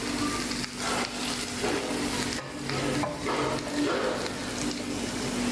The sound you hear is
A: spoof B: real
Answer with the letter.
B